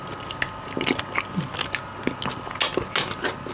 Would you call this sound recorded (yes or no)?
yes